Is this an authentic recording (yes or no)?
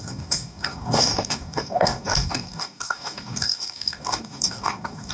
no